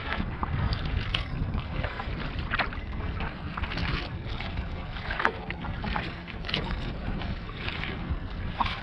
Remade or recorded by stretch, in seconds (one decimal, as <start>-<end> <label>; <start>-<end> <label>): 0.0-2.1 remade; 2.1-2.8 recorded; 2.8-8.8 remade